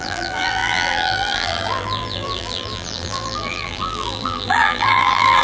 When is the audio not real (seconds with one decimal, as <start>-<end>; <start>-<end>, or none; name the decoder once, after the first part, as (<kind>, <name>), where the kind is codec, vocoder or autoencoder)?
0.0-5.4 (vocoder, BigVGAN v2)